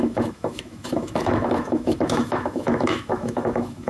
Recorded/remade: remade